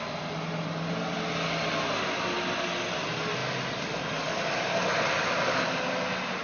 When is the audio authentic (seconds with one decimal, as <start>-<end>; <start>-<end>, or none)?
0.0-6.4